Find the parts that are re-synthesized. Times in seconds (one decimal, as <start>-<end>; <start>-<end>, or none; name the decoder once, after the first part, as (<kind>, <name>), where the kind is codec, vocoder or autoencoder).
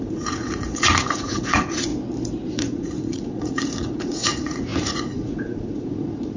0.0-1.9 (vocoder, Vocos); 2.5-6.4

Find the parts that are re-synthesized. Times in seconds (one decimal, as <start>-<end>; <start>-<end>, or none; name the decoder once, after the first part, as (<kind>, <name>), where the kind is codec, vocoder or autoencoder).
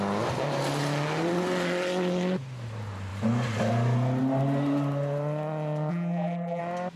5.9-6.6 (vocoder, BigVGAN v2)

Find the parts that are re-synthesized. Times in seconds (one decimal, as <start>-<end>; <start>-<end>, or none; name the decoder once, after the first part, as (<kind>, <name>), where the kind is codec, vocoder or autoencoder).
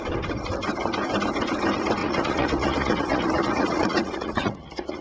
2.0-5.0 (vocoder, Vocos)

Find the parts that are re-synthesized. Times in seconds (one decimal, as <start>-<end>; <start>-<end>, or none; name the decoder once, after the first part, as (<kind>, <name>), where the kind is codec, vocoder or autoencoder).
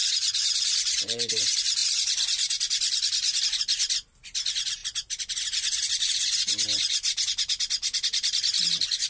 0.0-1.3 (vocoder, Vocos)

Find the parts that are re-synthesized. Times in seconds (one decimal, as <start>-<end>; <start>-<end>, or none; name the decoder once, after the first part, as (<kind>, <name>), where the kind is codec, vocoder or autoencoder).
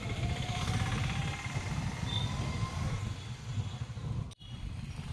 none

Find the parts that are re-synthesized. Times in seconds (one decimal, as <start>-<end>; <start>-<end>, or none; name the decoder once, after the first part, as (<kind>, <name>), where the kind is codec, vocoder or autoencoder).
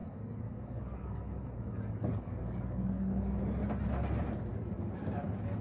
0.0-3.4 (codec, DAC); 4.5-5.0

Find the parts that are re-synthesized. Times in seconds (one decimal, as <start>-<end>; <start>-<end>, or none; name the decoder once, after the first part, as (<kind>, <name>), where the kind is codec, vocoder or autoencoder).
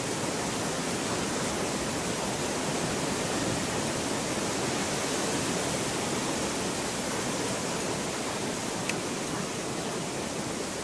none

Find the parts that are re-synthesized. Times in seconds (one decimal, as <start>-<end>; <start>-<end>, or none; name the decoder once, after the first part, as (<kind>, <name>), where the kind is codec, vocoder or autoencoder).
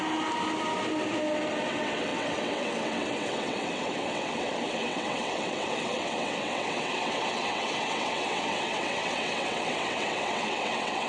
1.7-11.1 (vocoder, WaveNeXt)